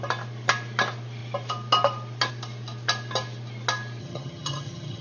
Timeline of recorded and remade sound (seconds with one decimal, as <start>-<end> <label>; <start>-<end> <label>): 0.0-4.0 recorded; 4.0-5.0 remade